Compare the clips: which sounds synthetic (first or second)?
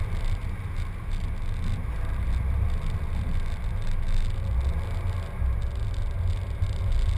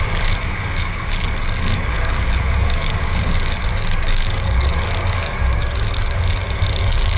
second